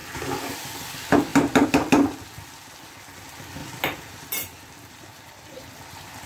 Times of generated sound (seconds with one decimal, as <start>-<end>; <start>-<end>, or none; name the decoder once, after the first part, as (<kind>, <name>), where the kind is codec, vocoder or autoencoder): 3.6-5.7 (vocoder, BigVGAN v2)